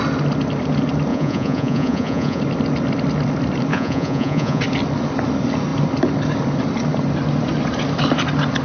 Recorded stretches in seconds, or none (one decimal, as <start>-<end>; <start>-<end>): 0.0-1.1; 2.4-3.7; 4.6-8.6